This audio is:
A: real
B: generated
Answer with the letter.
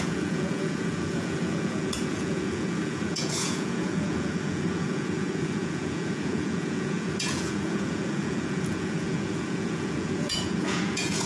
B